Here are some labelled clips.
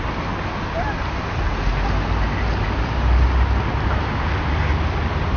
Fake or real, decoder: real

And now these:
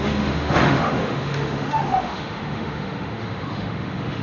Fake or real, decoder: fake, autoencoder, DAC-VAE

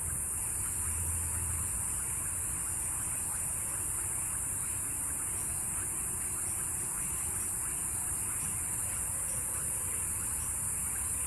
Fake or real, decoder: real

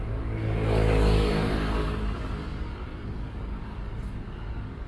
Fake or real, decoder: fake, codec, DAC